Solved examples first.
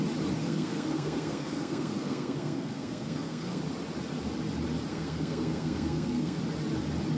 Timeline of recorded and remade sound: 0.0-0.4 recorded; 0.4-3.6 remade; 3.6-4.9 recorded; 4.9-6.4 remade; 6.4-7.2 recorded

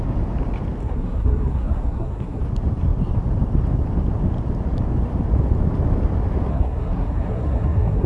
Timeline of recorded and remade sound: 0.0-0.8 recorded; 0.8-2.4 remade; 2.4-6.5 recorded; 6.5-8.1 remade

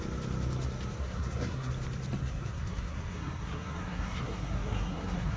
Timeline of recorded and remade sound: 0.0-1.0 recorded; 1.0-1.7 remade; 1.7-2.2 recorded; 2.2-5.4 remade